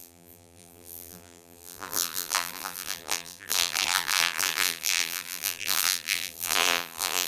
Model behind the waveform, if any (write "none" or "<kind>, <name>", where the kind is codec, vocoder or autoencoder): vocoder, BigVGAN v2